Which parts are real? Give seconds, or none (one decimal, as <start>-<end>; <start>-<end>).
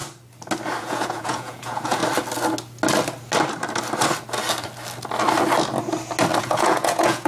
0.0-0.8; 2.0-6.4